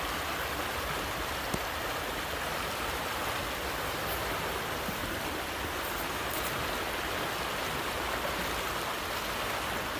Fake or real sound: real